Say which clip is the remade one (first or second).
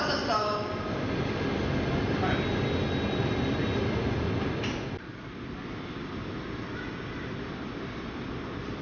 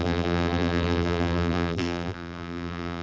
second